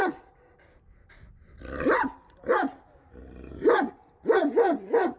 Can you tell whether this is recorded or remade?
recorded